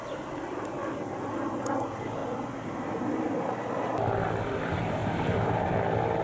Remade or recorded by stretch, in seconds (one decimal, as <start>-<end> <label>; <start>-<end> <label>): 0.0-5.0 recorded; 5.0-5.6 remade; 5.6-6.2 recorded